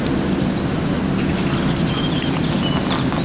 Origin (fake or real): real